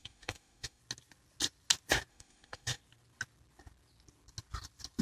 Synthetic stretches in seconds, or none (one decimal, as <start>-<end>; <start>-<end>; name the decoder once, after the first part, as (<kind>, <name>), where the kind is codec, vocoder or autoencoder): 0.0-0.8 (autoencoder, DAC-VAE); 2.1-2.8